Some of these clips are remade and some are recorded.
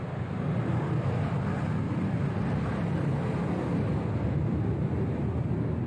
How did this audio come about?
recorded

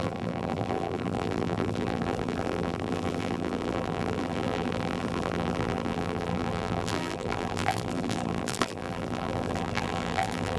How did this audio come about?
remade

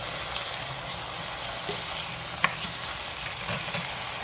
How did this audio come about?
recorded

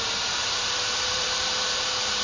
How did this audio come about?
remade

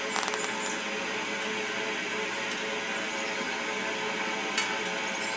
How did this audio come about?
recorded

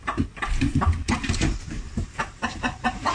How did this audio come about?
remade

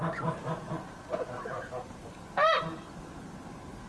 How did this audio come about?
recorded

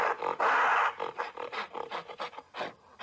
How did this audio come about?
recorded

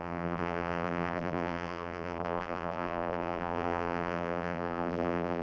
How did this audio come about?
remade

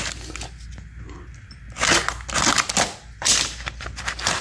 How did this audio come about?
recorded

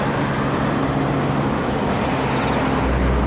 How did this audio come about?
recorded